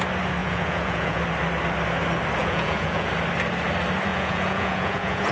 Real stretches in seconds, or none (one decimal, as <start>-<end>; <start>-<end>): 0.0-0.4; 1.2-2.4; 3.1-4.1